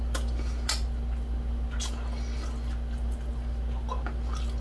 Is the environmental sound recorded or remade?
recorded